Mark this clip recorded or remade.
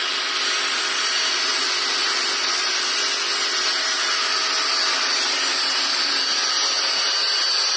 remade